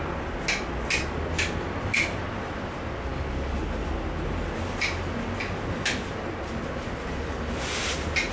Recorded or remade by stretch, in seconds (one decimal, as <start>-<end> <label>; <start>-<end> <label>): 0.0-8.3 recorded